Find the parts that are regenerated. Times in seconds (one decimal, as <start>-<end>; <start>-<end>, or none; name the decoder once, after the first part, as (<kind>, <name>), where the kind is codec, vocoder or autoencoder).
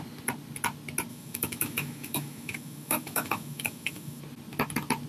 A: 1.1-4.2 (autoencoder, DAC-VAE)